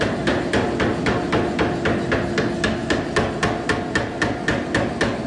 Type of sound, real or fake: real